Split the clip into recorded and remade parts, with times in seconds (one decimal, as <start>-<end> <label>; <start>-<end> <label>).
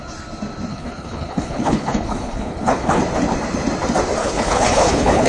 0.0-0.7 recorded; 0.7-3.0 remade; 3.0-4.2 recorded; 4.2-5.3 remade